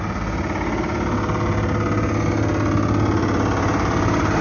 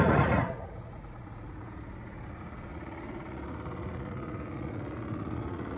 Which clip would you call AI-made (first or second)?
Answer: second